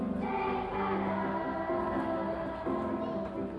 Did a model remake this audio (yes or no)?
no